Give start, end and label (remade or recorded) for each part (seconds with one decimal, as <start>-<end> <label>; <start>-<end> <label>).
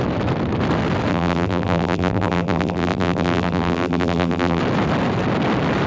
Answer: 0.0-1.1 recorded; 1.1-4.6 remade; 4.6-5.9 recorded